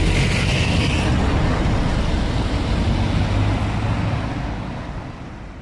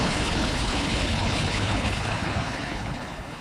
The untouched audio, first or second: first